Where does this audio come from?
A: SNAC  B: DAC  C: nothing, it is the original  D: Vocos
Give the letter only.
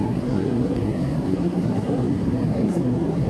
A